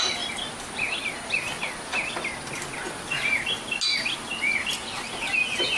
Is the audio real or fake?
real